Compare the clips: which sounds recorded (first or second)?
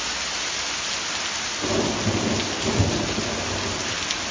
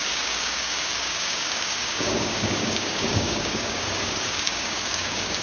first